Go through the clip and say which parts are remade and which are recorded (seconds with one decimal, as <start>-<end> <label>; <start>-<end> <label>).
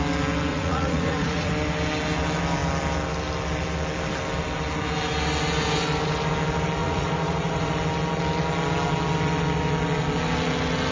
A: 0.0-0.5 recorded; 0.5-1.5 remade; 1.5-6.8 recorded; 6.8-7.7 remade; 7.7-10.9 recorded